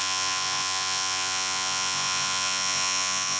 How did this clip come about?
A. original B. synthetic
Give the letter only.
B